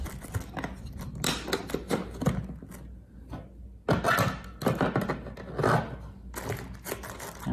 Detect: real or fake real